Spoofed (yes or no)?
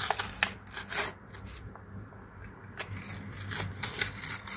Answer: no